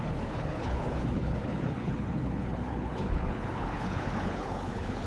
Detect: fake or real fake